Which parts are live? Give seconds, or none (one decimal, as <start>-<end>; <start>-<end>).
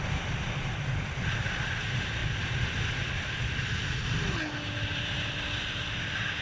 0.0-6.4